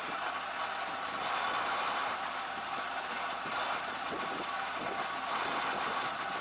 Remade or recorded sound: recorded